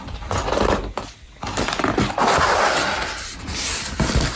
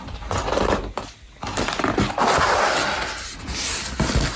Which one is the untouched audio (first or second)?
second